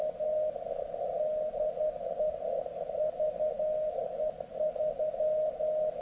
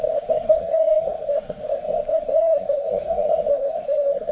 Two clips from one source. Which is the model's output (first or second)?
second